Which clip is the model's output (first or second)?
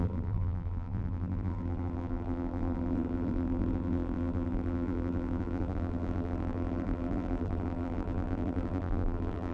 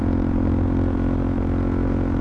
first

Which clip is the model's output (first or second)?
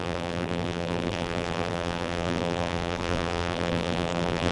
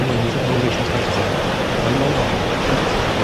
first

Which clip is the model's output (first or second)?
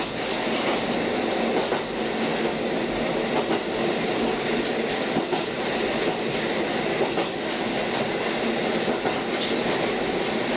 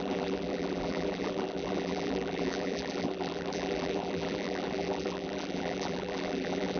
second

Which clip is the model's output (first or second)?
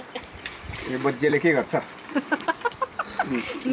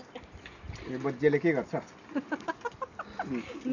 first